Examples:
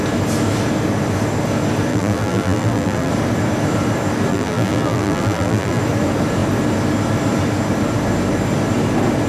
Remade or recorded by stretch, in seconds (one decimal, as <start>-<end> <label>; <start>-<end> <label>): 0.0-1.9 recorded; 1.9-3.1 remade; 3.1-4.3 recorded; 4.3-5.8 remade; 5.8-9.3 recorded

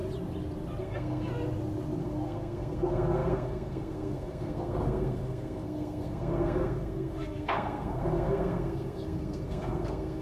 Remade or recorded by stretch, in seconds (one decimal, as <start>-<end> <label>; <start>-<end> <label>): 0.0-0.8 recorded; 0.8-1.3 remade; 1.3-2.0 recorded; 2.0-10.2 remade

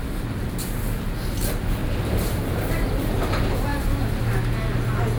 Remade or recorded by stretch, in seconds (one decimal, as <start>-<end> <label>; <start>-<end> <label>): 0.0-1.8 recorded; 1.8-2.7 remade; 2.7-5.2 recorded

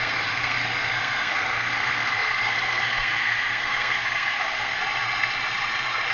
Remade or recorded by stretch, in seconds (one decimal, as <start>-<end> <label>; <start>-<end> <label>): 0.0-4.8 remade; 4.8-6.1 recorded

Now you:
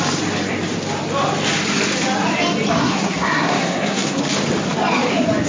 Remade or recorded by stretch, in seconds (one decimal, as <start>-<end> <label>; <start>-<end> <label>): 0.0-2.8 recorded; 2.8-4.2 remade; 4.2-5.5 recorded

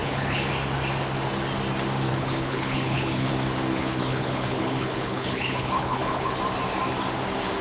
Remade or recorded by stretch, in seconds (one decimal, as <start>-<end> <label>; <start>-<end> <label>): 0.0-0.5 remade; 0.5-2.1 recorded; 2.1-3.3 remade; 3.3-3.8 recorded; 3.8-6.4 remade; 6.4-7.6 recorded